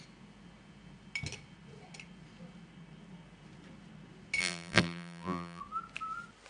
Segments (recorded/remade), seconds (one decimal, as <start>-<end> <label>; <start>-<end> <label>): 0.0-4.4 recorded; 4.4-5.6 remade; 5.6-6.5 recorded